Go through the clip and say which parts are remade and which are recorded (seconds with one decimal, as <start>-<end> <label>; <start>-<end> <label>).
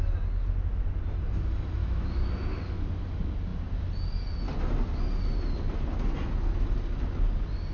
0.0-1.8 recorded; 1.8-2.3 remade; 2.3-7.7 recorded